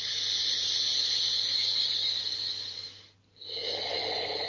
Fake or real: real